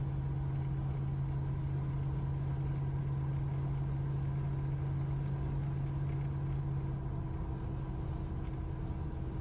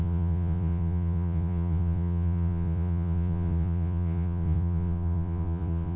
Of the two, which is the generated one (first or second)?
second